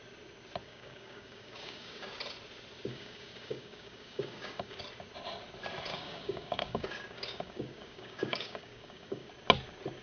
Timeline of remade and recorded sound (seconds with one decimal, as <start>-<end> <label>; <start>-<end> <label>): 0.0-0.6 recorded; 0.6-2.1 remade; 2.1-2.9 recorded; 2.9-4.8 remade; 4.8-5.9 recorded; 5.9-9.3 remade; 9.3-10.0 recorded